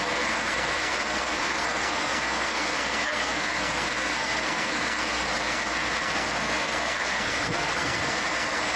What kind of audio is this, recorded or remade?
remade